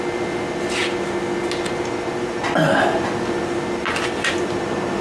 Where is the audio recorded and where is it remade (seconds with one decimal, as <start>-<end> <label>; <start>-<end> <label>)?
0.0-5.0 recorded